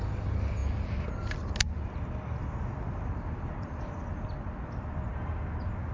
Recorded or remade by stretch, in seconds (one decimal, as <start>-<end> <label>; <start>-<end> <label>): 0.0-5.9 recorded